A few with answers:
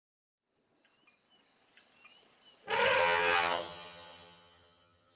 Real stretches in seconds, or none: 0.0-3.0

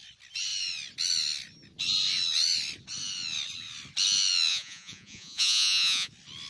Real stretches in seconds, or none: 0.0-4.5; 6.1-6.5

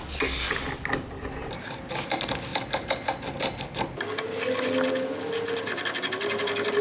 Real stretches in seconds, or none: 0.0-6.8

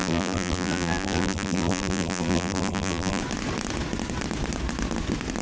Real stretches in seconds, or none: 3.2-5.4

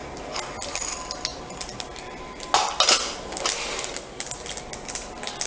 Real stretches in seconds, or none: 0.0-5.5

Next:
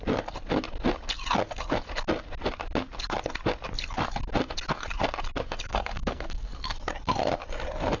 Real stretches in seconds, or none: 0.0-5.7; 6.5-8.0

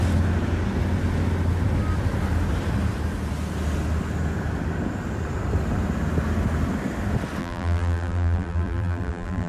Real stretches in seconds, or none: 0.0-7.4